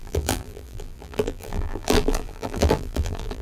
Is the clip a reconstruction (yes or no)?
yes